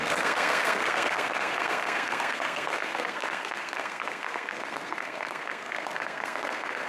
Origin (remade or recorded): remade